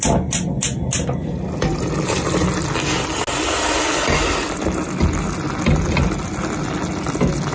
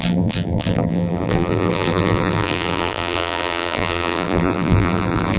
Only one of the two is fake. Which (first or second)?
second